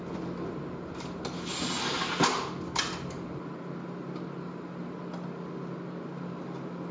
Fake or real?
real